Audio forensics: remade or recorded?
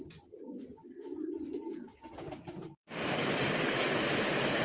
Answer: recorded